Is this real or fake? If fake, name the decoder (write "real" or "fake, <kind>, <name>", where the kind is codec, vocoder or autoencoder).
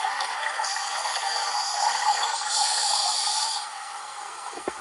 fake, codec, SNAC